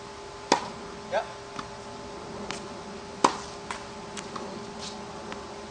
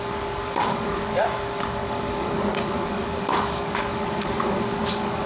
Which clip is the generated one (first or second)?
second